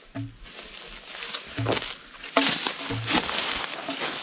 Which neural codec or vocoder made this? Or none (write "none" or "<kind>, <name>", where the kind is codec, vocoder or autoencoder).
none